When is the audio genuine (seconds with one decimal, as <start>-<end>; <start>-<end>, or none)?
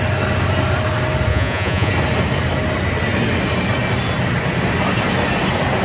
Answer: 0.0-1.3; 1.9-5.8